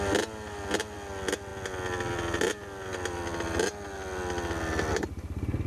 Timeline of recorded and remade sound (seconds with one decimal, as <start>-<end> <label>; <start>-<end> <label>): 0.0-5.7 recorded